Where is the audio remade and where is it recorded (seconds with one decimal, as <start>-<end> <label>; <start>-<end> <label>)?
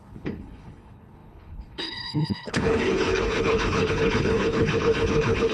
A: 0.0-5.5 remade